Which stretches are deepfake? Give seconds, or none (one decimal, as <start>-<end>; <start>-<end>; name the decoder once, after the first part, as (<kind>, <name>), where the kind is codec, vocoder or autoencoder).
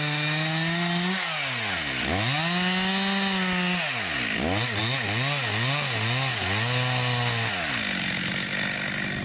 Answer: none